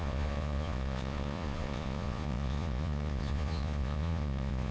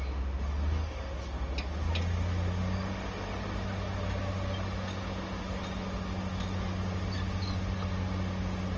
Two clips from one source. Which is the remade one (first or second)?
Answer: first